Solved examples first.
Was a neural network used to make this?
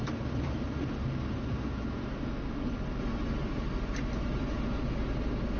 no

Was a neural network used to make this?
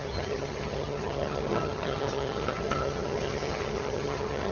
yes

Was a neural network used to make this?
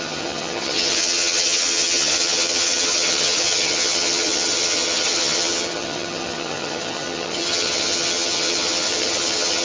yes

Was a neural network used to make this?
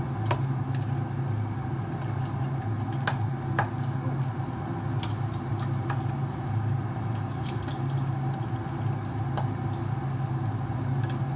no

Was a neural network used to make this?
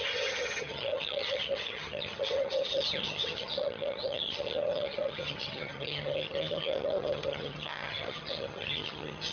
yes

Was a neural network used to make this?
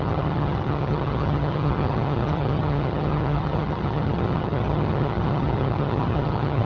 yes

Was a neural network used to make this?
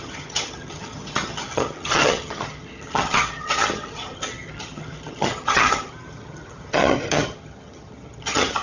yes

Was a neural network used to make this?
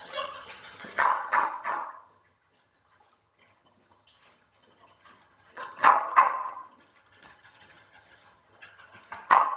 yes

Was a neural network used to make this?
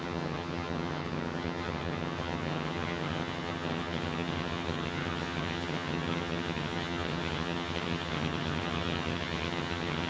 yes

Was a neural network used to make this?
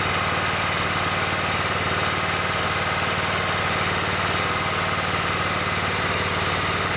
no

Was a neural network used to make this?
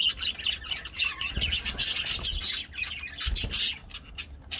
no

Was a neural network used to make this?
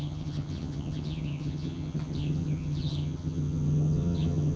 yes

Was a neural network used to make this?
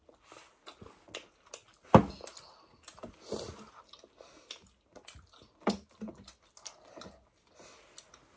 no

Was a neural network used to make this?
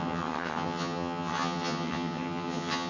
yes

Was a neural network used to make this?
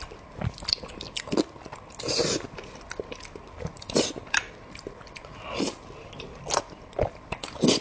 no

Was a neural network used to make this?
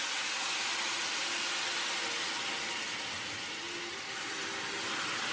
no